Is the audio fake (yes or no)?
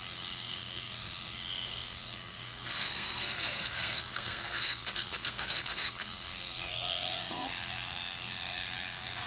yes